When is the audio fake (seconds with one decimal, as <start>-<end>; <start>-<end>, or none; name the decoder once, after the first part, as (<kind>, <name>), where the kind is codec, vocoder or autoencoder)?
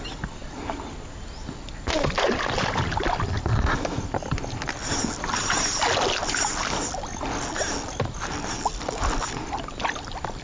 none